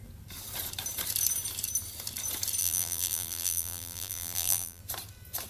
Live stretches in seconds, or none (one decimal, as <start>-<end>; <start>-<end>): 0.0-2.6; 4.8-5.5